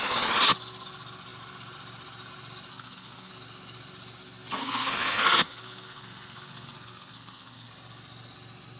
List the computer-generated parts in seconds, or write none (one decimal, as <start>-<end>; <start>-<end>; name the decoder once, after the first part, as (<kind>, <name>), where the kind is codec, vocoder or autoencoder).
2.7-3.3 (codec, SNAC); 4.6-7.7